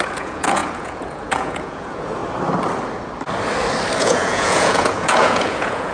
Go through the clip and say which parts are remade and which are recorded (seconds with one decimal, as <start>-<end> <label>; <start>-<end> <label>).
0.0-2.2 remade; 2.2-4.0 recorded; 4.0-5.9 remade